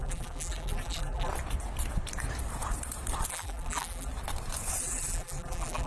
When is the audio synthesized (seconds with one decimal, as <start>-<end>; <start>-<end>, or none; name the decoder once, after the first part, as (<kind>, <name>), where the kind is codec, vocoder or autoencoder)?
0.0-1.3 (vocoder, BigVGAN v2); 3.3-4.1; 4.8-5.9